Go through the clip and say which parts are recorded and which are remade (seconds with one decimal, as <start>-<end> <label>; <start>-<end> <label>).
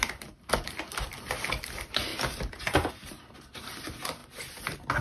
0.0-0.5 recorded; 0.5-2.1 remade; 2.1-2.9 recorded; 2.9-4.2 remade; 4.2-5.0 recorded